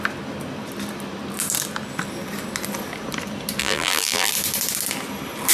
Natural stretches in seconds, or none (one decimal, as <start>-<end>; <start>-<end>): 0.0-3.6; 4.3-5.5